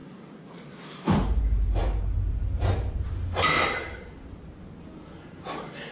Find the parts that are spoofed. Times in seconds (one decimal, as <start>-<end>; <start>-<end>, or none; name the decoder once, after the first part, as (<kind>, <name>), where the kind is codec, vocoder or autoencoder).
0.0-1.8 (vocoder, BigVGAN v2); 5.3-5.9